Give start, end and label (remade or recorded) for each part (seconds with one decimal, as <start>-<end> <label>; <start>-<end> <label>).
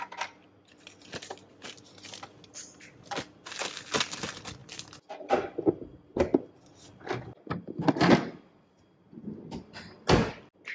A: 0.0-10.7 recorded